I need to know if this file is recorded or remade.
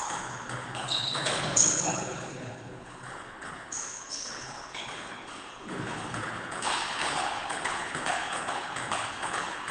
remade